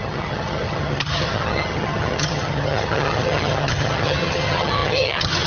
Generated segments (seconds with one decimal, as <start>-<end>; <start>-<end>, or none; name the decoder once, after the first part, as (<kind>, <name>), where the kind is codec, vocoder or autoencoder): 0.0-5.5 (vocoder, HiFi-GAN)

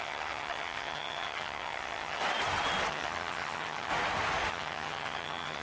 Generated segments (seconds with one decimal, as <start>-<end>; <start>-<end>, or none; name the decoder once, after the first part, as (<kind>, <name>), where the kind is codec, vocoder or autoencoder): 0.0-2.2 (vocoder, HiFi-GAN); 2.9-3.9; 4.5-5.6

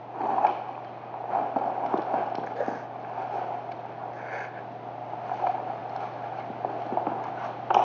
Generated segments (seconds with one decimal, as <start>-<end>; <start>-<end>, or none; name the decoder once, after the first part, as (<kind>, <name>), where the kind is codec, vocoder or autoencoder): none

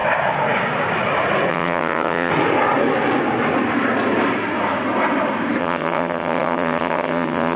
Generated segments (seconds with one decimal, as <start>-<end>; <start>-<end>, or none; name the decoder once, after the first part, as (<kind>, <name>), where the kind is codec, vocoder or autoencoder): 1.5-2.3 (vocoder, HiFi-GAN); 5.6-7.6

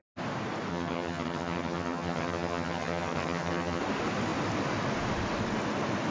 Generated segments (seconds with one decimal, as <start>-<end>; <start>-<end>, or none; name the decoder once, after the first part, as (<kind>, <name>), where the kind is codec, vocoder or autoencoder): 0.7-3.8 (vocoder, HiFi-GAN)

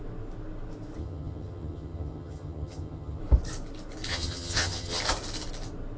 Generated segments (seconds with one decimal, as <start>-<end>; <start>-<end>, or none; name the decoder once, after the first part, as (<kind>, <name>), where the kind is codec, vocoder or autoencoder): 1.0-3.2 (vocoder, HiFi-GAN); 4.1-5.0